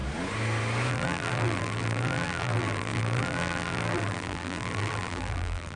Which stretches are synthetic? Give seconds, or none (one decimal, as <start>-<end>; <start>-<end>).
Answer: 0.9-5.8